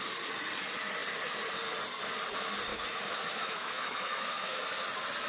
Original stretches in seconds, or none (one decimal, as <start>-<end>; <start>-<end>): 0.0-2.7; 4.6-5.3